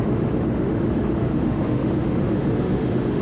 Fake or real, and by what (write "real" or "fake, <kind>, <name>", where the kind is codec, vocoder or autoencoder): fake, autoencoder, DAC-VAE